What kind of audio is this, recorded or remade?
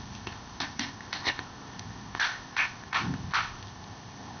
remade